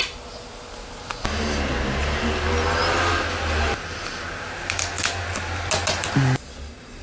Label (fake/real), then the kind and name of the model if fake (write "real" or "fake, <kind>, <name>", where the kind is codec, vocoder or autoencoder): real